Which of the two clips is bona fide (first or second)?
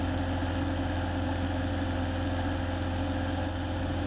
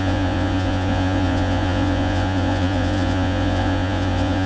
first